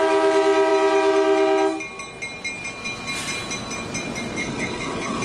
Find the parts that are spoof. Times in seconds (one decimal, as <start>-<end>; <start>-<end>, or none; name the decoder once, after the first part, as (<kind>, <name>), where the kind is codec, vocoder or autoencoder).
4.4-5.2 (codec, HILCodec)